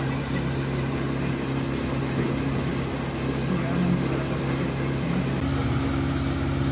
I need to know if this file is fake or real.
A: real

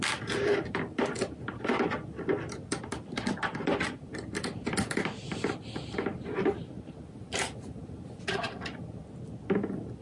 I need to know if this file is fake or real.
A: real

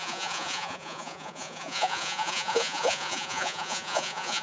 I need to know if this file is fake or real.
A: fake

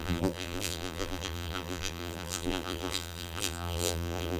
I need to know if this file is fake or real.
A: fake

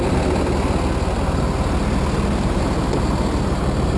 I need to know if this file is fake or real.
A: real